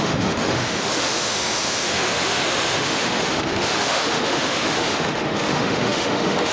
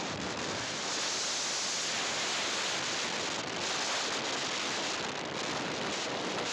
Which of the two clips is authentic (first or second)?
second